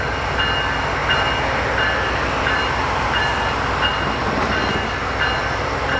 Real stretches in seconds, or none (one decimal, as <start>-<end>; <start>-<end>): 0.0-6.0